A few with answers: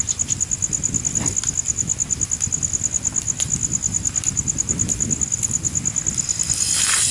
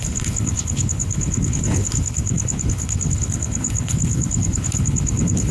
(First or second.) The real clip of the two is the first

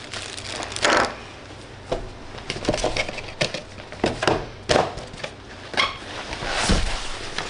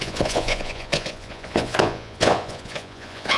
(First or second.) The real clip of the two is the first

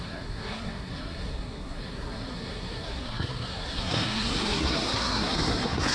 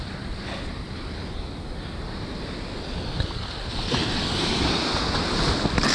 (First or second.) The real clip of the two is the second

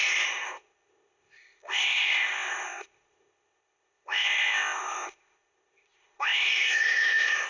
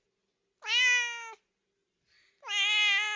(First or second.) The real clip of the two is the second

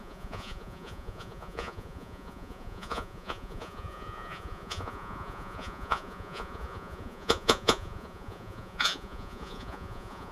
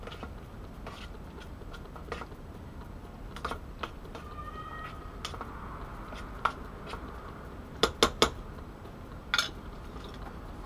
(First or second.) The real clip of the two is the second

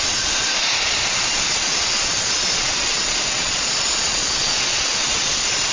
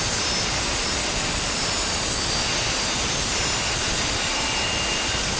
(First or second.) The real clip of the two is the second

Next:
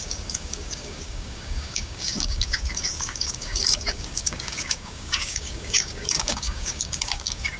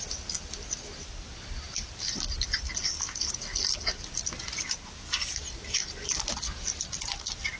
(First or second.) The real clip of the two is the second